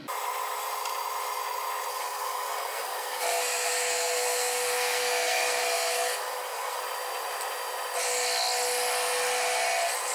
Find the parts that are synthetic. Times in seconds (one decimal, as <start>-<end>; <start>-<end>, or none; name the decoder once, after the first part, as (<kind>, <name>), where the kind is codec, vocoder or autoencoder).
1.9-6.8 (codec, SNAC)